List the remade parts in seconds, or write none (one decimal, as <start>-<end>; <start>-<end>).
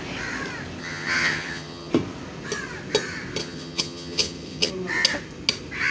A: 0.8-1.9; 3.4-4.7